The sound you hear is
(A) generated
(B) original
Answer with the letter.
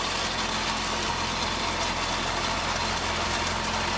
B